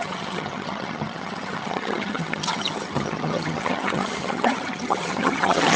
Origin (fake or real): fake